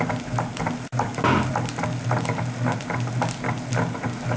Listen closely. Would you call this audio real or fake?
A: real